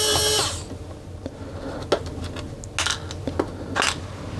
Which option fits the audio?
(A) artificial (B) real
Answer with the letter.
B